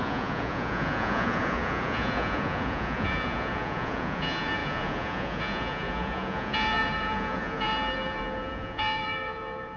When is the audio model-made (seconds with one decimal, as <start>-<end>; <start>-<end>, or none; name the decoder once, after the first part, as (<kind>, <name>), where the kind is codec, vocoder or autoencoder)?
0.0-9.8 (vocoder, Vocos)